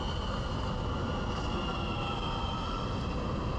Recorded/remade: recorded